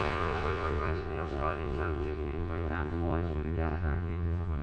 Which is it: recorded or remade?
remade